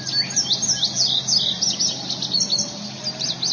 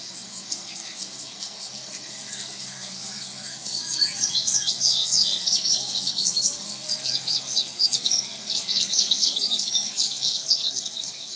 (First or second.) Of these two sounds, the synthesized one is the second